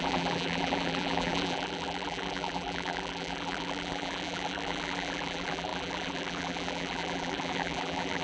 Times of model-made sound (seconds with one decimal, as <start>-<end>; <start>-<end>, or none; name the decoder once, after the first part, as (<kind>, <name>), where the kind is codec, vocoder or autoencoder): 0.0-8.2 (vocoder, BigVGAN v2)